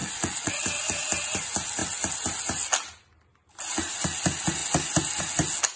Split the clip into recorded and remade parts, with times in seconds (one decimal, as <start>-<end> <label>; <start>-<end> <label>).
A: 0.0-0.5 remade; 0.5-5.8 recorded